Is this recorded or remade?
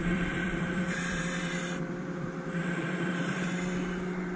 remade